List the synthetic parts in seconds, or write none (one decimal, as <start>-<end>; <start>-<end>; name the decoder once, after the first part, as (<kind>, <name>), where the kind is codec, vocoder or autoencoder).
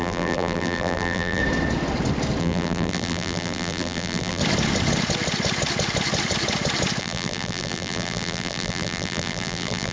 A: 0.0-1.4 (vocoder, BigVGAN v2); 2.4-4.4; 7.0-9.9